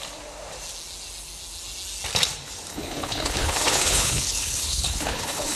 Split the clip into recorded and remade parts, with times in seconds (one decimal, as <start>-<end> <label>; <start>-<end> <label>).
0.0-2.7 recorded; 2.7-5.6 remade